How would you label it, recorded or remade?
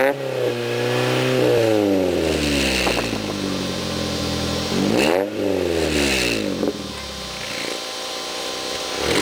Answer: recorded